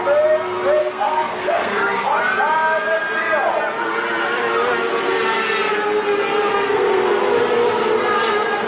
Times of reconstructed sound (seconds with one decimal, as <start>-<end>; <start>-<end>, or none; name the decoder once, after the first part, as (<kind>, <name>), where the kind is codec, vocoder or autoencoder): 0.8-2.2 (codec, SNAC); 6.5-7.1